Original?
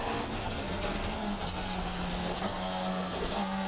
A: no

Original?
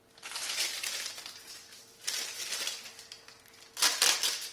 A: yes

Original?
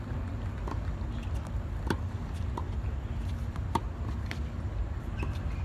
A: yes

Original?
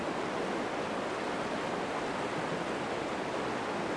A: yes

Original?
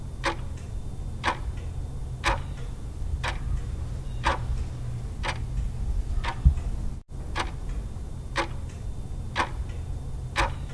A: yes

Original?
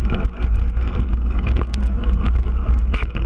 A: no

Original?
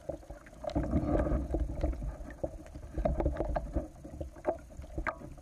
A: yes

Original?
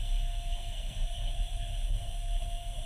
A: no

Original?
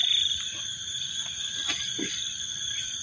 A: yes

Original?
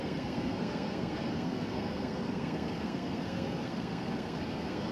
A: no